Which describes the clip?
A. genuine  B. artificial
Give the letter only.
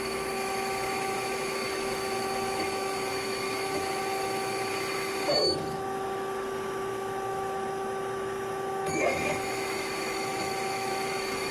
B